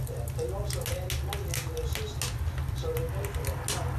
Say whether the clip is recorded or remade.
recorded